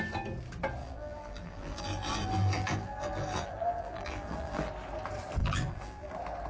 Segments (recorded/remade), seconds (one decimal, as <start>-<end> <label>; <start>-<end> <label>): 0.0-0.8 recorded; 0.8-4.7 remade; 4.7-5.4 recorded; 5.4-6.1 remade; 6.1-6.5 recorded